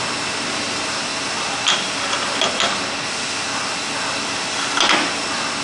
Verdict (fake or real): real